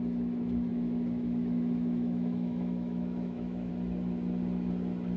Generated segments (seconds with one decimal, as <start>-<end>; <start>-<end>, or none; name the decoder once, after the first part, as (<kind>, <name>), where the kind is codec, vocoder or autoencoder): 0.7-3.7 (autoencoder, DAC-VAE)